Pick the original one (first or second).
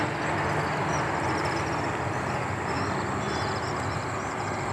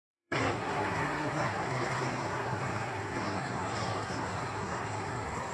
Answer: first